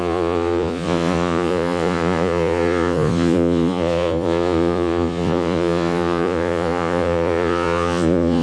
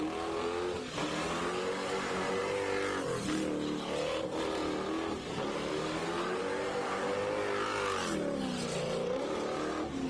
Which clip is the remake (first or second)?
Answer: first